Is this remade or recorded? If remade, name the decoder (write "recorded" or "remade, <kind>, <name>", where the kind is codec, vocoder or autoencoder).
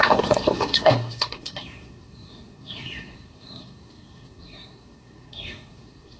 remade, codec, SNAC